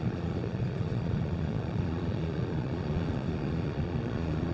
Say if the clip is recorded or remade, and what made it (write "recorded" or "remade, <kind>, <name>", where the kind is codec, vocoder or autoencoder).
remade, vocoder, Vocos